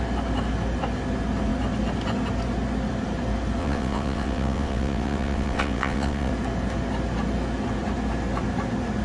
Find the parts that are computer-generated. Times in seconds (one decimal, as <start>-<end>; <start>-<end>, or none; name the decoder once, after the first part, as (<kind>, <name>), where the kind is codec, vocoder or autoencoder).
3.6-6.3 (vocoder, WaveNeXt)